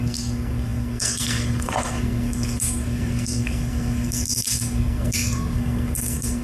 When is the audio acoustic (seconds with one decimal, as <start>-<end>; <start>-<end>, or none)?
none